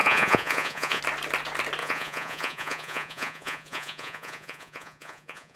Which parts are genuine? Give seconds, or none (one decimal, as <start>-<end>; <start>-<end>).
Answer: 1.0-1.8